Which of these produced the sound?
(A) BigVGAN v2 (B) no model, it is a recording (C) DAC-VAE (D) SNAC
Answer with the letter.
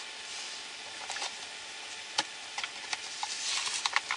B